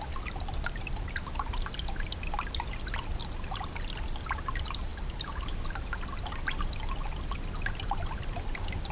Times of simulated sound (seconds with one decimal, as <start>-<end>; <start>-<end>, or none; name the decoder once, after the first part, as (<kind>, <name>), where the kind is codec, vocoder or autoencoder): none